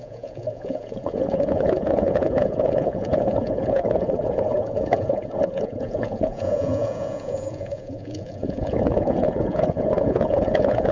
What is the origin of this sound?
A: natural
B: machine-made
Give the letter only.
B